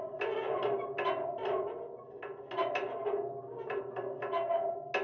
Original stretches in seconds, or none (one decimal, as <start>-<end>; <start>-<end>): 0.0-5.0